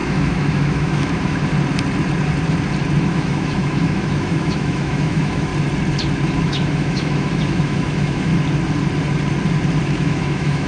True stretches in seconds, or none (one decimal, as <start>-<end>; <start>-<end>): 1.5-3.0; 5.5-6.4; 8.3-9.8